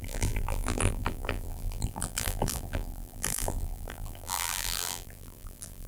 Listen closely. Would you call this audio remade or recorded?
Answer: remade